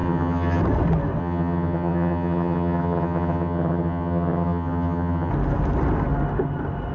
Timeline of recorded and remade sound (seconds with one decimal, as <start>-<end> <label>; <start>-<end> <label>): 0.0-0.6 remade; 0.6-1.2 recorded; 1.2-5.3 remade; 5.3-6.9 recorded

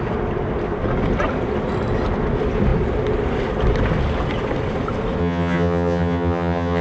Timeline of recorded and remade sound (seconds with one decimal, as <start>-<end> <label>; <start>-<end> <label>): 0.0-5.2 recorded; 5.2-6.8 remade

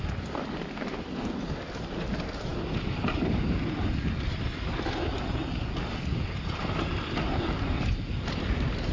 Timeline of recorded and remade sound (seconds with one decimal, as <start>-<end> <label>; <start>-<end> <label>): 0.0-8.9 recorded

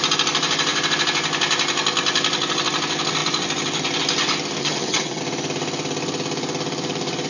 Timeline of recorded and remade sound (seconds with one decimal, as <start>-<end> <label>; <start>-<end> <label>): 0.0-4.6 recorded; 4.6-5.2 remade; 5.2-7.3 recorded

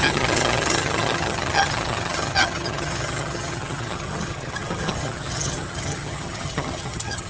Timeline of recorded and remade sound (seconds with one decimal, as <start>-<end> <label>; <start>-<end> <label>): 0.0-7.3 remade